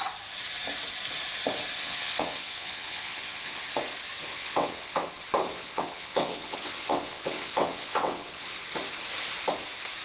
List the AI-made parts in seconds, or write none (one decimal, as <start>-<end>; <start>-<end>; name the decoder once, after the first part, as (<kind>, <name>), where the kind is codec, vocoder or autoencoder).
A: 1.7-3.6 (vocoder, WaveNeXt); 4.3-5.1; 5.5-8.5